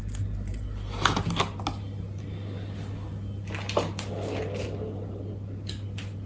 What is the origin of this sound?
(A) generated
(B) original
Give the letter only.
B